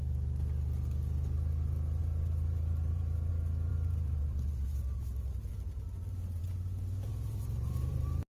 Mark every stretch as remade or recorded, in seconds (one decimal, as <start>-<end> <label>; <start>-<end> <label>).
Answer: 0.0-2.0 recorded; 2.0-3.3 remade; 3.3-3.7 recorded; 3.7-6.4 remade; 6.4-7.1 recorded; 7.1-8.3 remade